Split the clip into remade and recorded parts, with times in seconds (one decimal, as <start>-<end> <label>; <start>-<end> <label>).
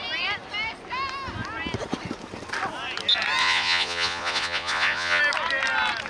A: 0.0-3.4 recorded; 3.4-5.2 remade; 5.2-6.1 recorded